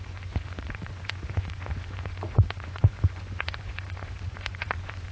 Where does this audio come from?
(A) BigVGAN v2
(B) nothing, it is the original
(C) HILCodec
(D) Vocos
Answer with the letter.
D